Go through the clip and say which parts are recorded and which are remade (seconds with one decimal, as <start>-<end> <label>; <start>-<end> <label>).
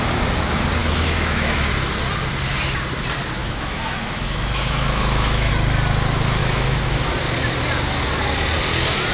0.0-0.8 recorded; 0.8-1.7 remade; 1.7-3.4 recorded; 3.4-5.5 remade; 5.5-6.4 recorded; 6.4-7.0 remade; 7.0-9.1 recorded